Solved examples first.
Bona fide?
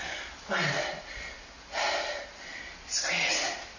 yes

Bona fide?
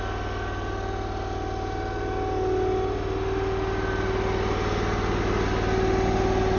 yes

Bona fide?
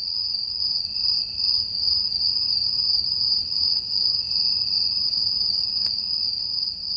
yes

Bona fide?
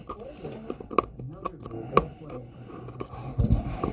yes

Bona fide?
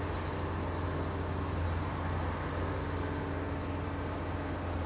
yes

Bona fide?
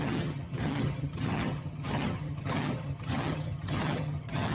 no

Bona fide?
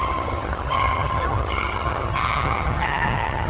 no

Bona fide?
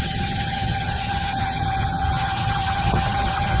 no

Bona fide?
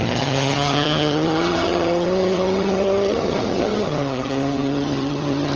no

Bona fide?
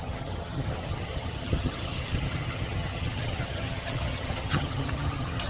no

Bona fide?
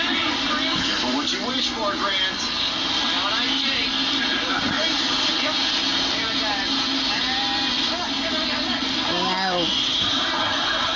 yes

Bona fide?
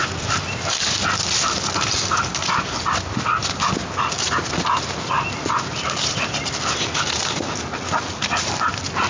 yes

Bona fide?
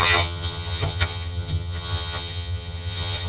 no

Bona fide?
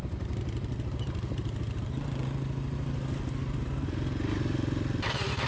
yes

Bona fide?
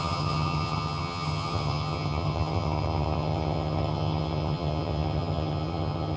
no